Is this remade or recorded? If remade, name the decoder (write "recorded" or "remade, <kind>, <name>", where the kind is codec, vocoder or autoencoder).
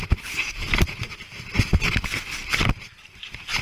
recorded